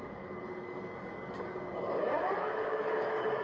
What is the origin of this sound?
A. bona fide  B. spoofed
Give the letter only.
B